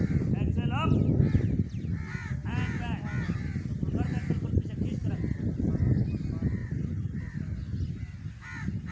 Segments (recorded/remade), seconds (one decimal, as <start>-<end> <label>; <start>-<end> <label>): 0.0-8.9 recorded